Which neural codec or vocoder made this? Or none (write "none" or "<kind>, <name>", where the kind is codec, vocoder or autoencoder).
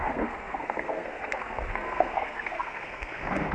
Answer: codec, SNAC